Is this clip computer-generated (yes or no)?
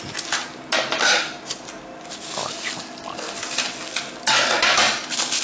no